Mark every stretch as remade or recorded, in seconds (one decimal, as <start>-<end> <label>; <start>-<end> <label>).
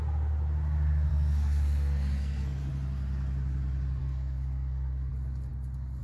0.0-1.1 recorded; 1.1-2.7 remade; 2.7-4.0 recorded; 4.0-5.1 remade; 5.1-6.0 recorded